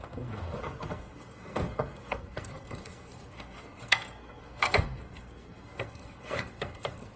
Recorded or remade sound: remade